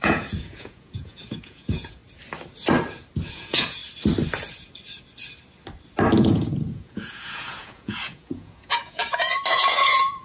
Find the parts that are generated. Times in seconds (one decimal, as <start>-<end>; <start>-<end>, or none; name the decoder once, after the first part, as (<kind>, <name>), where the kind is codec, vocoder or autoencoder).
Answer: 0.0-2.0 (vocoder, Vocos); 3.3-3.8; 6.2-9.0; 9.5-10.2

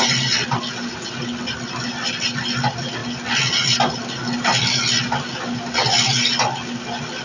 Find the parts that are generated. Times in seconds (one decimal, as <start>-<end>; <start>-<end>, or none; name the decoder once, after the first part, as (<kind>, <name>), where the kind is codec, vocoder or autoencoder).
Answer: none

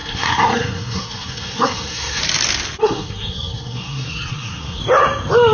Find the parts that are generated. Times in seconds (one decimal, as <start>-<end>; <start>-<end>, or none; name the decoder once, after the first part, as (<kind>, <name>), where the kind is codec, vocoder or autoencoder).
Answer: 0.0-2.2 (codec, SNAC); 2.8-4.8